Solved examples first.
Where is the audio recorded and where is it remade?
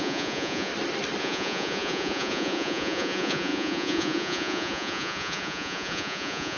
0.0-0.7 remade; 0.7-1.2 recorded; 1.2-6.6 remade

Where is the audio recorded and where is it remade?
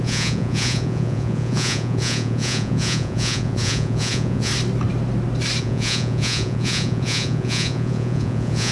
0.0-4.5 remade; 4.5-5.6 recorded; 5.6-8.7 remade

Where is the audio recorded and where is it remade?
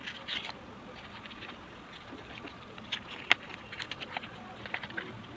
0.0-5.4 recorded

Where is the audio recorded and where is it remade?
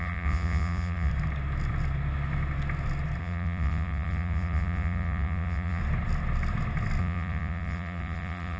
0.0-1.1 remade; 1.1-3.2 recorded; 3.2-5.8 remade; 5.8-7.0 recorded; 7.0-8.6 remade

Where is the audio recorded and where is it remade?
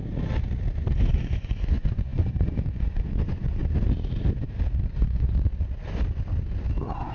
0.0-0.8 recorded; 0.8-3.6 remade; 3.6-4.9 recorded; 4.9-5.5 remade; 5.5-7.1 recorded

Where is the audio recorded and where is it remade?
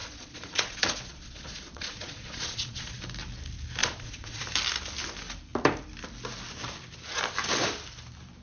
0.0-3.0 remade; 3.0-3.8 recorded; 3.8-4.4 remade; 4.4-8.4 recorded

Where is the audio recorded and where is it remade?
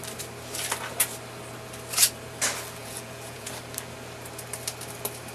0.0-2.8 recorded; 2.8-3.5 remade; 3.5-5.3 recorded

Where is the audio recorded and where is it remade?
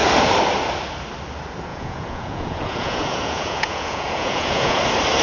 0.0-1.7 recorded; 1.7-4.8 remade; 4.8-5.2 recorded